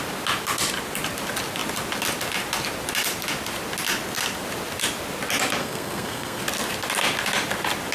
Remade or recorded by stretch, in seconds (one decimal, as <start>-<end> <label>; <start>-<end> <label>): 0.0-5.6 recorded; 5.6-6.4 remade; 6.4-7.9 recorded